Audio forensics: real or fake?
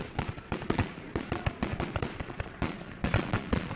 fake